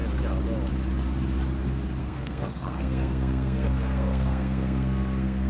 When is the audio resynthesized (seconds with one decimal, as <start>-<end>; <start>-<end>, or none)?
2.0-5.5